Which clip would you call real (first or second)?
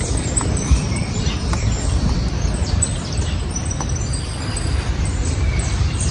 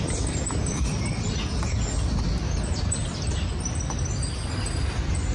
second